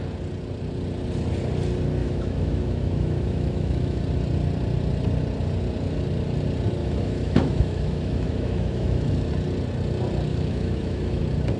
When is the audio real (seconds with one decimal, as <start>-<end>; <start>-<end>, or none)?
0.0-2.0; 4.0-6.8; 9.3-10.3; 11.2-11.6